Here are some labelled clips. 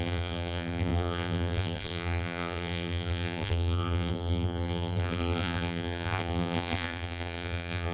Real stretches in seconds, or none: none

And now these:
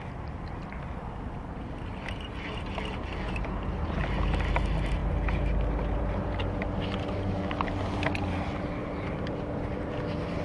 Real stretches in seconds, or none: 0.0-8.8; 10.0-10.4

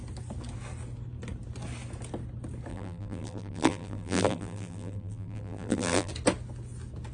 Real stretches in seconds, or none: 0.0-2.7; 6.1-7.1

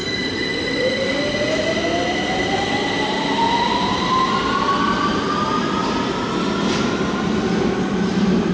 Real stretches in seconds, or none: 1.2-8.5